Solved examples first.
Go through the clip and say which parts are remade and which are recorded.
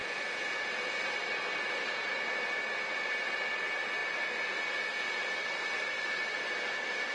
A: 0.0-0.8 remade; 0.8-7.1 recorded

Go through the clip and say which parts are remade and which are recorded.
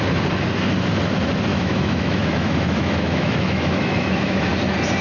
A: 0.0-1.5 recorded; 1.5-4.5 remade; 4.5-5.0 recorded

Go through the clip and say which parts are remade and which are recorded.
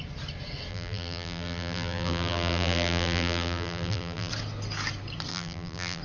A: 0.0-0.7 recorded; 0.7-4.3 remade; 4.3-5.3 recorded; 5.3-6.0 remade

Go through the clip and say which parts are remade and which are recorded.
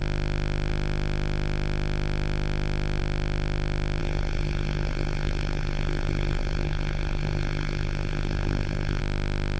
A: 0.0-4.0 recorded; 4.0-9.0 remade; 9.0-9.6 recorded